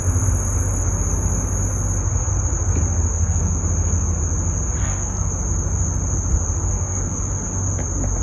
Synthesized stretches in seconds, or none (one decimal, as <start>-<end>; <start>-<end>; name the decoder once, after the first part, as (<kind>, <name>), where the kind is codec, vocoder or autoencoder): 3.1-3.6 (codec, SNAC); 4.8-5.3; 6.7-7.2